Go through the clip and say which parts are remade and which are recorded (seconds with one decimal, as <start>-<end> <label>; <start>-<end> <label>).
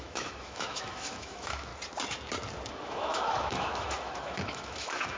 0.0-1.7 remade; 1.7-2.7 recorded; 2.7-5.2 remade